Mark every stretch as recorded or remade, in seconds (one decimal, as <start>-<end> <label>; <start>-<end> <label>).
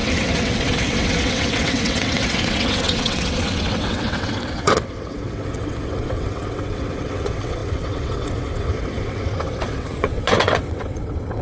0.0-11.4 remade